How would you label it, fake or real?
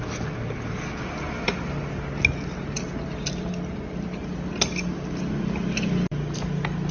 real